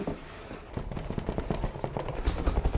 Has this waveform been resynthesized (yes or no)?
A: no